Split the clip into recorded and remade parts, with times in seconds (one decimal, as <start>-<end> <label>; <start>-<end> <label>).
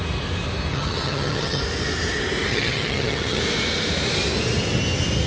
0.0-0.7 recorded; 0.7-1.6 remade; 1.6-2.5 recorded; 2.5-3.4 remade; 3.4-5.3 recorded